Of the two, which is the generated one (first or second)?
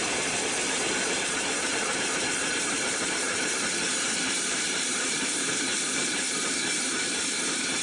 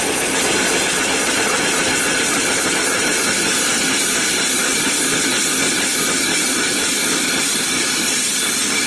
first